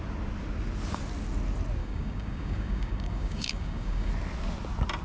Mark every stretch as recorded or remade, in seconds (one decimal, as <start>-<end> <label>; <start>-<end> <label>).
0.0-1.8 recorded; 1.8-4.1 remade; 4.1-5.0 recorded